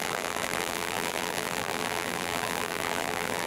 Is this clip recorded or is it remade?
remade